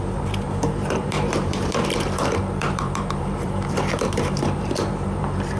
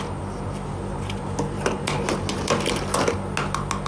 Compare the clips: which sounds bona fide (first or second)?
second